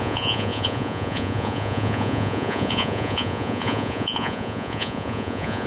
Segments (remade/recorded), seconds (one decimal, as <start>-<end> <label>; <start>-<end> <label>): 0.0-5.7 remade